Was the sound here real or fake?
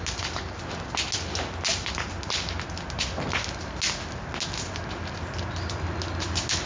real